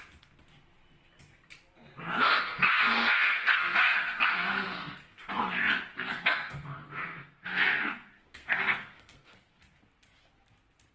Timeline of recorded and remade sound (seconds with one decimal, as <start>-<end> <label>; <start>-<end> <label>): 0.0-2.2 recorded; 2.2-5.3 remade; 5.3-6.1 recorded; 6.1-9.6 remade; 9.6-10.9 recorded